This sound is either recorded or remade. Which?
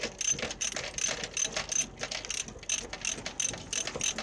recorded